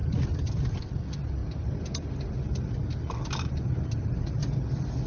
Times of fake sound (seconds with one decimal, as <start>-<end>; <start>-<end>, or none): none

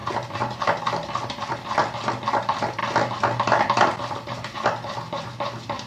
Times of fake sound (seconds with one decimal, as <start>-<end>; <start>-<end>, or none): 0.8-1.8; 2.4-2.8

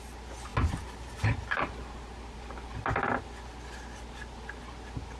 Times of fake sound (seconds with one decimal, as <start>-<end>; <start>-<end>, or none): none

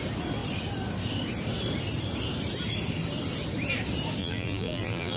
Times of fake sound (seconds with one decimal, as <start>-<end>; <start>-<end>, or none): 4.2-5.2

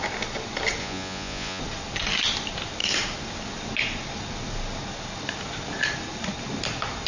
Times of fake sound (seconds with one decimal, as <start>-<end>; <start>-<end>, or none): 0.8-1.6

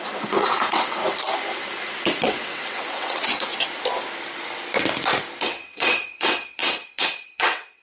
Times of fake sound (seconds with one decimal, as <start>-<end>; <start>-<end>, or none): 0.0-1.0; 2.2-3.5; 5.4-7.8

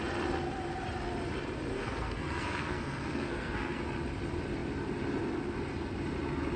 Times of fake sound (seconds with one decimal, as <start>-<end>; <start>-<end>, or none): 1.7-3.8